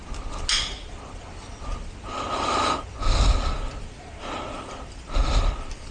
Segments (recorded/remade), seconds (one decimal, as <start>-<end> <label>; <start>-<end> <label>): 0.0-5.9 recorded